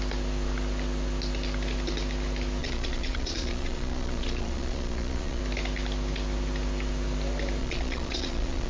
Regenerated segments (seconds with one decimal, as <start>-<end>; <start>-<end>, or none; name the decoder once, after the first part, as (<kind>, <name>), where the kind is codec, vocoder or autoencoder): 2.6-5.4 (vocoder, Vocos); 7.6-8.7